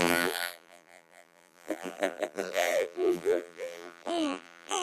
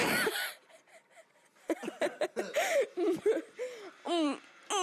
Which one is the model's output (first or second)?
first